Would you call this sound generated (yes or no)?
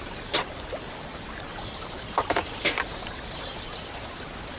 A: no